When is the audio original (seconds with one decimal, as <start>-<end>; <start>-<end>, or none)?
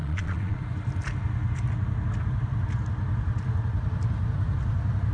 0.6-5.1